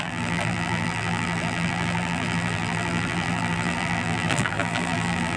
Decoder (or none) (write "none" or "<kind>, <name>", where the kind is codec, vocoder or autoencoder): vocoder, BigVGAN v2